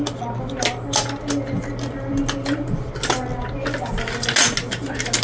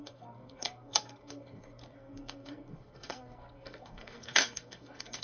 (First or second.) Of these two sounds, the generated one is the second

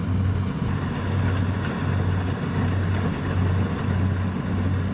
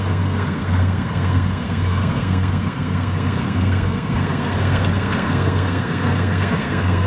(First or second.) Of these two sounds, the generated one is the second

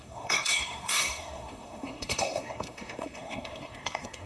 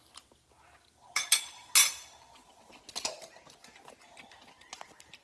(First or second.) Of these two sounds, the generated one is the first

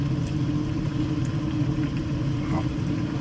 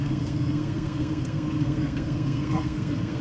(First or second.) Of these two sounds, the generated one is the second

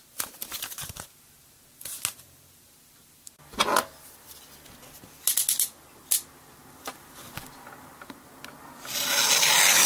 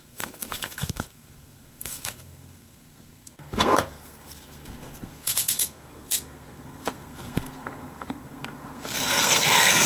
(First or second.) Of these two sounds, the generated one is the second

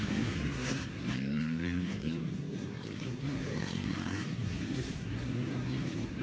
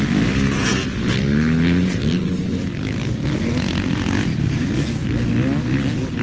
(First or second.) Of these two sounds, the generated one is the first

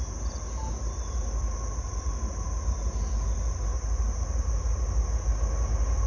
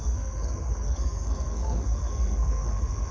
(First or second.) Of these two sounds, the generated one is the second